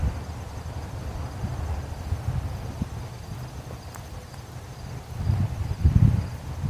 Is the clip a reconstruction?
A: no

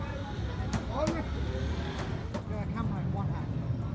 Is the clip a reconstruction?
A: no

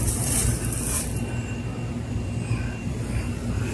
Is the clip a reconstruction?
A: no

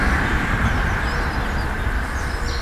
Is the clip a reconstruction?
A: no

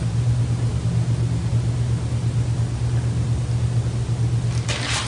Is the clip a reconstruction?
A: no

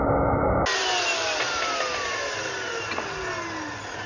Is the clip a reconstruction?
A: no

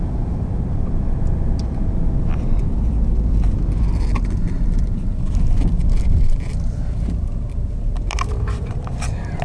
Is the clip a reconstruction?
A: yes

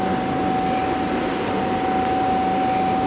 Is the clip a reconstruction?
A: no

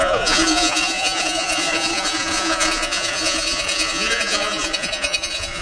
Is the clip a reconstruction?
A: yes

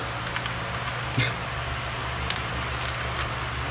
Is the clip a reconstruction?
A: no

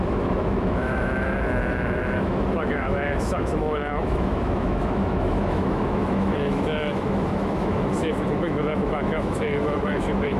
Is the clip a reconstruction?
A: yes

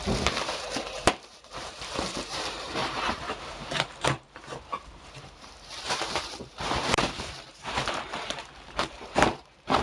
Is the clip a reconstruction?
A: yes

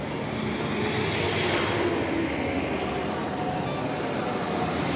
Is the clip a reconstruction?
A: no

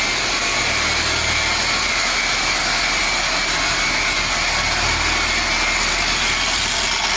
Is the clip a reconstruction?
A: no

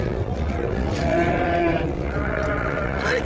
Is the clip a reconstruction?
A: yes